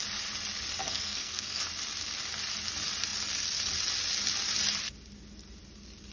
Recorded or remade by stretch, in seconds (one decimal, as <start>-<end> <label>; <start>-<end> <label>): 0.0-0.8 recorded; 0.8-1.6 remade; 1.6-6.1 recorded